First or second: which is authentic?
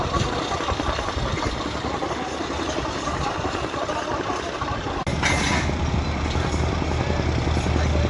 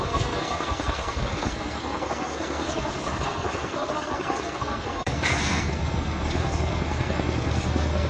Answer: first